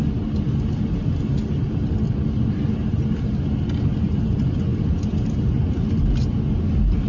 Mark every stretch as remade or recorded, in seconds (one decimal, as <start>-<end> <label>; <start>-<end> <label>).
0.0-7.1 recorded